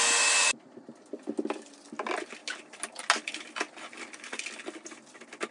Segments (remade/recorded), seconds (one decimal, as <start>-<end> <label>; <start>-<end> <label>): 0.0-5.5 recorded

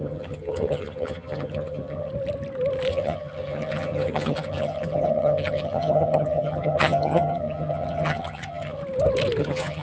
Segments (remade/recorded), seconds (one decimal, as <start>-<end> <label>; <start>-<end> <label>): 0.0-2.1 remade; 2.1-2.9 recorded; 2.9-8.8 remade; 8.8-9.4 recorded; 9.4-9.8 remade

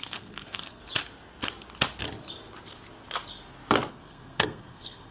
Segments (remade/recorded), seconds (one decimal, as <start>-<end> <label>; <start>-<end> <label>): 0.0-0.8 remade; 0.8-3.9 recorded; 3.9-5.1 remade

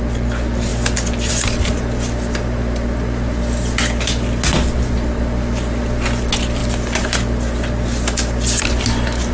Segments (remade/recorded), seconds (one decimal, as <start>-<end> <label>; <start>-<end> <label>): 0.0-9.3 recorded